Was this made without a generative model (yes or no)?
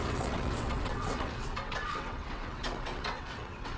no